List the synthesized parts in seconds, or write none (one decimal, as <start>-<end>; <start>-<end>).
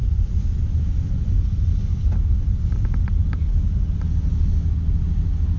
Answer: none